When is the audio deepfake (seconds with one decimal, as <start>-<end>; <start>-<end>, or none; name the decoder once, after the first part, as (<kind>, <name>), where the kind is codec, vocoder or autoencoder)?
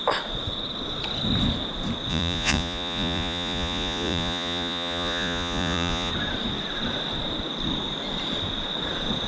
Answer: 2.1-6.1 (vocoder, Vocos)